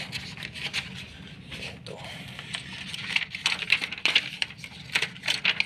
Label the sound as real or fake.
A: real